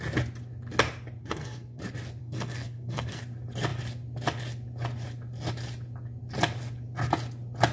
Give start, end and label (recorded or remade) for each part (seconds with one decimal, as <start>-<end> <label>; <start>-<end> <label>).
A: 0.0-1.2 recorded; 1.2-1.8 remade; 1.8-2.2 recorded; 2.2-3.2 remade; 3.2-7.7 recorded